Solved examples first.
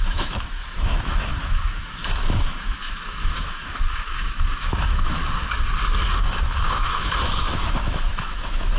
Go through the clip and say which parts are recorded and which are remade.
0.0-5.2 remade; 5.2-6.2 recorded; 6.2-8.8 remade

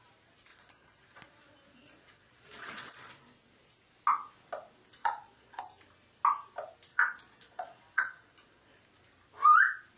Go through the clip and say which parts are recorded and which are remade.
0.0-0.5 recorded; 0.5-3.1 remade; 3.1-5.0 recorded; 5.0-5.6 remade; 5.6-6.9 recorded; 6.9-8.8 remade; 8.8-10.0 recorded

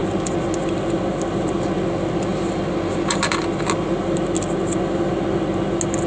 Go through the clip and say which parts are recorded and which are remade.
0.0-6.1 recorded

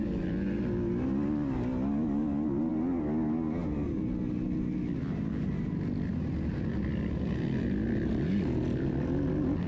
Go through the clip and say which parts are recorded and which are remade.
0.0-9.7 recorded

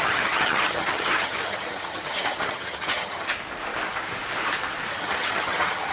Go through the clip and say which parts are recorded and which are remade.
0.0-3.3 remade; 3.3-4.9 recorded; 4.9-5.9 remade

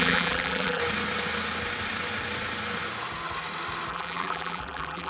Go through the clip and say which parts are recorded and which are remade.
0.0-0.8 remade; 0.8-3.9 recorded; 3.9-5.1 remade

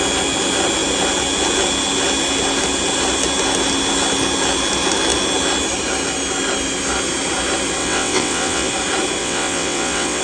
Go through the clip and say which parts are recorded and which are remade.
0.0-7.8 recorded; 7.8-8.7 remade; 8.7-9.2 recorded; 9.2-10.2 remade

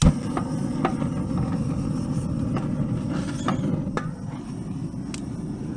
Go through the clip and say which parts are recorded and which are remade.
0.0-5.8 recorded